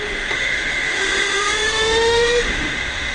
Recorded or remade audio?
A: remade